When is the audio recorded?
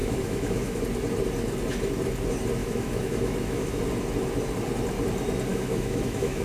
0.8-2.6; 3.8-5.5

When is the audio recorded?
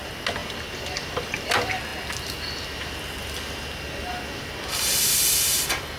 0.0-6.0